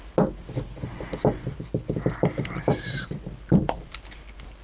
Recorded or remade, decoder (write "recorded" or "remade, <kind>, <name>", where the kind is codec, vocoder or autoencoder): recorded